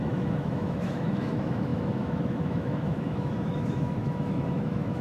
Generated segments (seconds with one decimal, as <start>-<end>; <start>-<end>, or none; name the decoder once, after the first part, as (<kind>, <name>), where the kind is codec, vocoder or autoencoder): 0.0-5.0 (autoencoder, DAC-VAE)